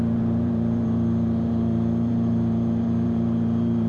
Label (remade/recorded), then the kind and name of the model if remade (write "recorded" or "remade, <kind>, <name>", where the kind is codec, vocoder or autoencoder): remade, vocoder, BigVGAN v2